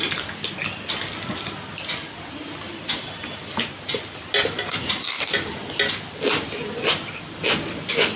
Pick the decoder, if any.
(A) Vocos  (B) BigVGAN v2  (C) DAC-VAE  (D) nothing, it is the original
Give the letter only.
D